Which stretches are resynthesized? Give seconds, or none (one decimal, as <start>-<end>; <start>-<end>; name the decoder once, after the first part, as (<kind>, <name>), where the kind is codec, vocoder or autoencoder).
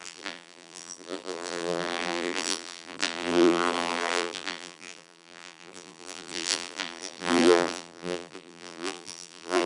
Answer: 0.0-9.7 (vocoder, BigVGAN v2)